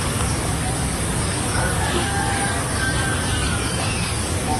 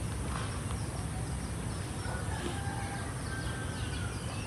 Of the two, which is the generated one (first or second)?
first